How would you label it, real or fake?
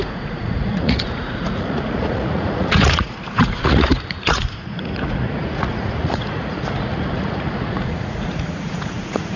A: fake